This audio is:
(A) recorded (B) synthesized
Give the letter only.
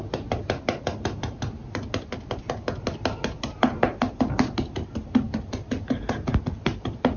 A